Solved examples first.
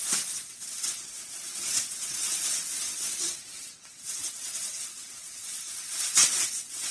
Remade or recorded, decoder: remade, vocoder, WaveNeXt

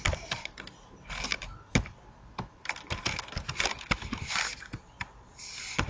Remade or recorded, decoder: recorded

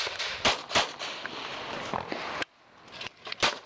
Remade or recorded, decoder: remade, vocoder, BigVGAN v2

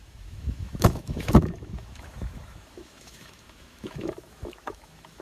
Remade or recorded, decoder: remade, autoencoder, DAC-VAE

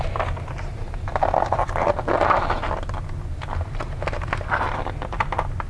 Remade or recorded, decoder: recorded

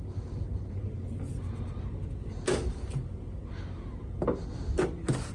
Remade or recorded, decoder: recorded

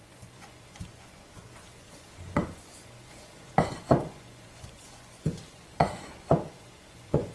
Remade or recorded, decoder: remade, vocoder, Vocos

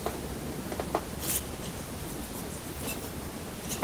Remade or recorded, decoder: recorded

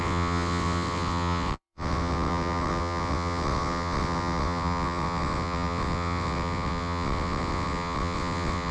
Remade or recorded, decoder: remade, vocoder, WaveNeXt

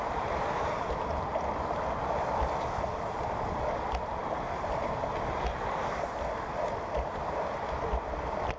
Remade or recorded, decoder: recorded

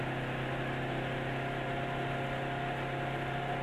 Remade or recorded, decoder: recorded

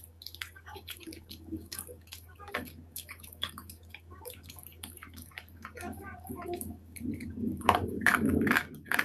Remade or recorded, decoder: remade, codec, DAC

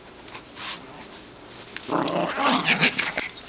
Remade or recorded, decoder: recorded